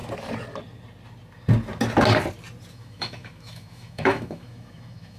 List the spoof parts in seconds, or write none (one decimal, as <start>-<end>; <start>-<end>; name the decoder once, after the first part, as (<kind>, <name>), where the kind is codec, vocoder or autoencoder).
2.7-5.2 (autoencoder, DAC-VAE)